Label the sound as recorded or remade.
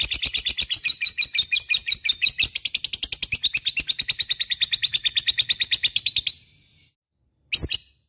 recorded